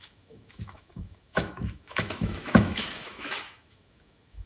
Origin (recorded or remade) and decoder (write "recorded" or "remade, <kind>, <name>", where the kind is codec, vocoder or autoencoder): remade, autoencoder, DAC-VAE